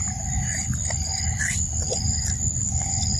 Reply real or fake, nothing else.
real